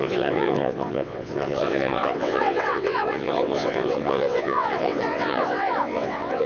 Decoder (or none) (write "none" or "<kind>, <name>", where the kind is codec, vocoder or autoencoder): vocoder, WaveNeXt